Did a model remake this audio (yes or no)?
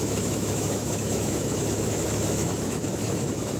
yes